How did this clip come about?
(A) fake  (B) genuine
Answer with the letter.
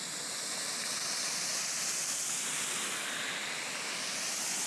B